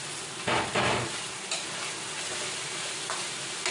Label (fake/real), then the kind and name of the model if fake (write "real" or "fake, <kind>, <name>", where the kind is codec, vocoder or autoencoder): real